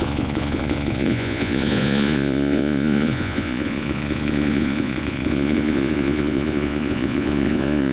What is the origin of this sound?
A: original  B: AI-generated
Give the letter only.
B